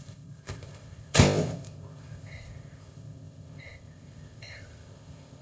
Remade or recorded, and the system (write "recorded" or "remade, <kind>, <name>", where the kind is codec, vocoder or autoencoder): remade, codec, ZipCodec